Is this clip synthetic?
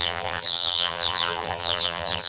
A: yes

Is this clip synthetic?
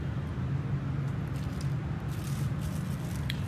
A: no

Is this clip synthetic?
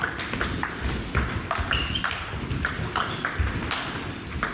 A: yes